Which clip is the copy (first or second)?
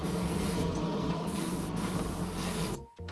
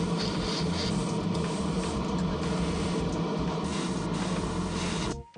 first